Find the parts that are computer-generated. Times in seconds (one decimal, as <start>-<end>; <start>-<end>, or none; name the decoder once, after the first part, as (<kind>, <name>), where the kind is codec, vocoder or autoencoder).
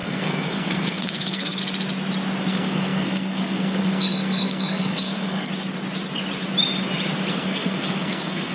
0.0-1.6 (codec, SNAC); 2.5-5.5; 7.3-8.5